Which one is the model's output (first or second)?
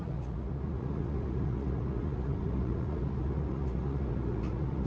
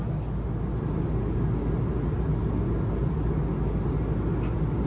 first